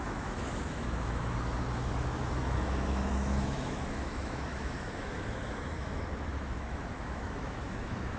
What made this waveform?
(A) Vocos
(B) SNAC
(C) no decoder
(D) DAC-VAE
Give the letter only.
D